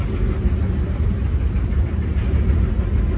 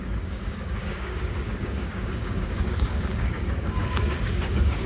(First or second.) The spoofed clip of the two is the second